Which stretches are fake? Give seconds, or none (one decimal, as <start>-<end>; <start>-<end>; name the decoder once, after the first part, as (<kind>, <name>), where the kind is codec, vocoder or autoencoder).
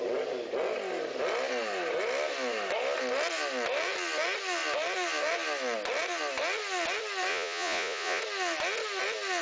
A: 7.3-8.2 (vocoder, Vocos)